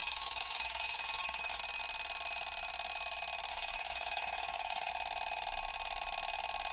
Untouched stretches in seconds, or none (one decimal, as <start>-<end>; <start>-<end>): 1.6-3.5; 4.9-6.7